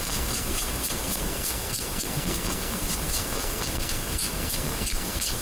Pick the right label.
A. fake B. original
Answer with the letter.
A